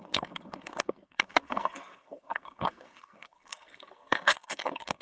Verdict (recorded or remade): remade